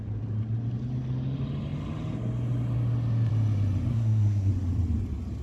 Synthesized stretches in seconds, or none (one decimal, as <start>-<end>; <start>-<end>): 3.9-4.5